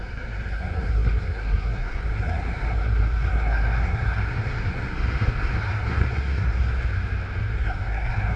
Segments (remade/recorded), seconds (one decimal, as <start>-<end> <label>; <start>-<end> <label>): 0.0-6.7 remade; 6.7-7.5 recorded; 7.5-8.4 remade